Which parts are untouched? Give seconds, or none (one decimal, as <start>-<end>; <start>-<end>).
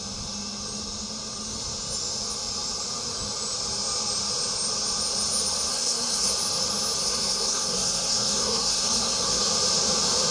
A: 0.0-5.7; 6.3-7.0; 9.4-10.3